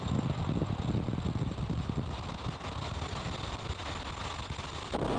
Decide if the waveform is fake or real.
real